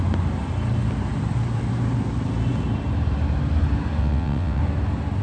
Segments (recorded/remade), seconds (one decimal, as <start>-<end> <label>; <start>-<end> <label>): 0.0-4.0 recorded; 4.0-4.6 remade; 4.6-5.2 recorded